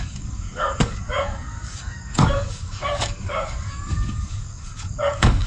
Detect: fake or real fake